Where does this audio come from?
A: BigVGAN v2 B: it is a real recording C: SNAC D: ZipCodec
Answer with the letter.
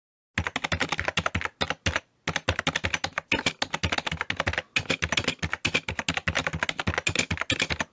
B